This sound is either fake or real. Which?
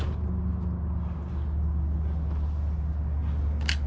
real